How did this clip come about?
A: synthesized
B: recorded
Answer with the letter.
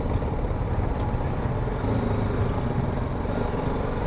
B